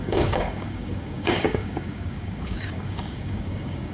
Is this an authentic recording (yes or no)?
no